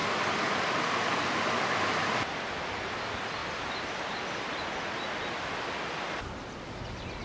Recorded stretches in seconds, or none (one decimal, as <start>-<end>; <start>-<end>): 0.0-7.2

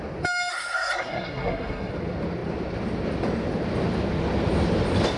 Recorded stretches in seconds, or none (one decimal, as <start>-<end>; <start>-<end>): 0.0-0.5; 1.9-5.2

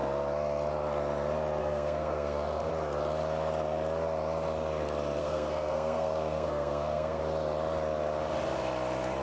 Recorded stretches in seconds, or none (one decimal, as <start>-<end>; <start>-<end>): 0.0-1.6; 2.7-5.2; 7.2-9.2

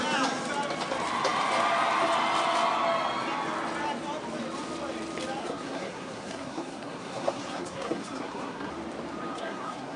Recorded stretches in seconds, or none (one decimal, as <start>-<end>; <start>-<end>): 0.0-5.4; 8.7-9.3

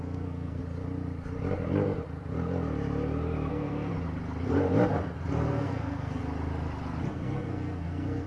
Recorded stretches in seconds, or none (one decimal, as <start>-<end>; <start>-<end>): 0.6-3.5; 3.9-5.5; 6.2-7.1